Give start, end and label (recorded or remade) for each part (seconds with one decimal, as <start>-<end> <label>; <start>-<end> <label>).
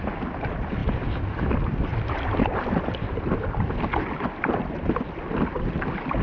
0.0-6.2 recorded